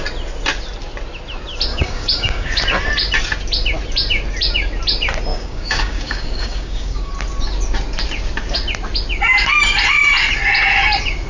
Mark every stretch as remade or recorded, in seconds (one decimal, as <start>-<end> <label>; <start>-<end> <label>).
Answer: 0.0-1.7 recorded; 1.7-2.6 remade; 2.6-5.3 recorded; 5.3-7.1 remade; 7.1-11.3 recorded